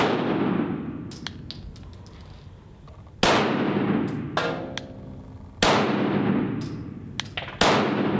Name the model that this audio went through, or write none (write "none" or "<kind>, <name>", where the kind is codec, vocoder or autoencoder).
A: none